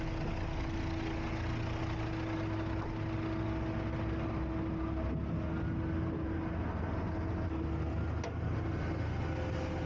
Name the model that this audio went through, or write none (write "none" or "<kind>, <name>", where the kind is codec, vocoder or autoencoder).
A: none